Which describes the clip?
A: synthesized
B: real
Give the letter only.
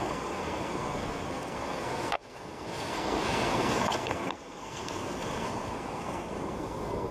A